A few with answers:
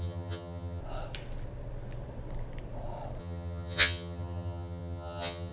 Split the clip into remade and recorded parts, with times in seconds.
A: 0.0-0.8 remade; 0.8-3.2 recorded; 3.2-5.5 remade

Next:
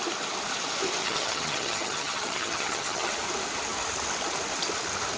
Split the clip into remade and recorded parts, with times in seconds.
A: 0.0-1.0 recorded; 1.0-3.1 remade; 3.1-5.2 recorded

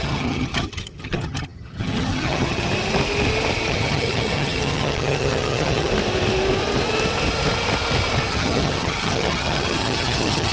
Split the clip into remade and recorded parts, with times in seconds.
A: 0.0-2.7 remade; 2.7-3.7 recorded; 3.7-5.9 remade; 5.9-8.3 recorded; 8.3-10.5 remade

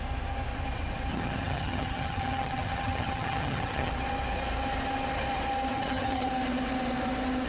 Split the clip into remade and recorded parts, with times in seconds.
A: 0.0-1.1 recorded; 1.1-3.9 remade; 3.9-5.7 recorded; 5.7-6.3 remade; 6.3-7.5 recorded

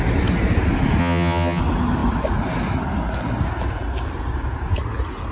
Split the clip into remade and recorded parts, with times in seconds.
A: 0.0-1.0 recorded; 1.0-1.6 remade; 1.6-5.3 recorded